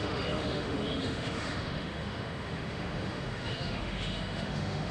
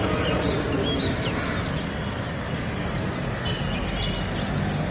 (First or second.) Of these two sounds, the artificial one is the first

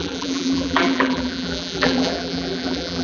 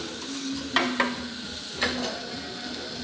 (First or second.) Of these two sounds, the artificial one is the first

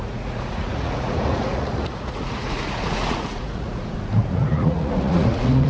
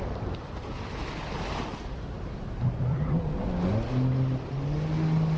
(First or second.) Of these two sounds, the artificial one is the first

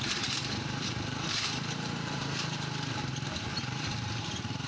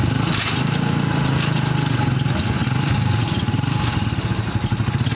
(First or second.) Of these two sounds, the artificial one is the first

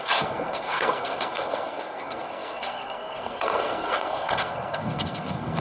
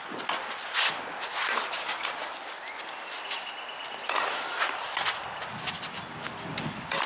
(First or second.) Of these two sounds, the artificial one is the first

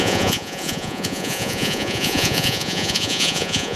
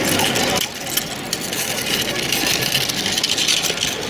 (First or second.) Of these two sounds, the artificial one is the first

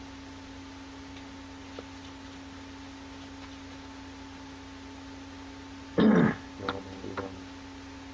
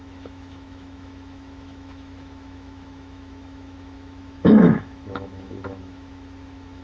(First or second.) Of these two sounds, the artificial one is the second